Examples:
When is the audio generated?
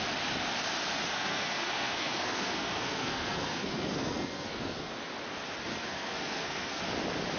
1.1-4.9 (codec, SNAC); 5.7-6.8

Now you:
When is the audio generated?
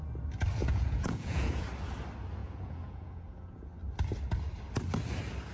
0.6-1.6 (vocoder, Vocos); 2.4-3.7